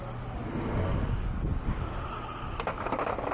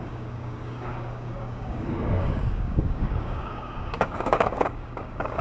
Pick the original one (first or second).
first